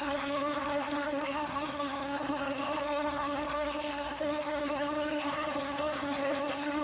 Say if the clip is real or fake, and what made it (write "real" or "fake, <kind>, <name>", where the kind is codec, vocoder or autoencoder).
fake, codec, SNAC